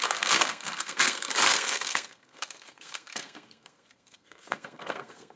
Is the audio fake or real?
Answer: fake